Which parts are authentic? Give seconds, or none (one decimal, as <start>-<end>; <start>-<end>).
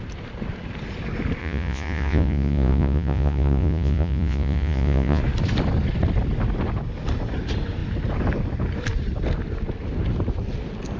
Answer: 0.0-1.4; 5.2-11.0